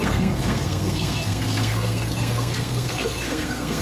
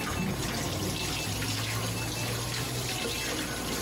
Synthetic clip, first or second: first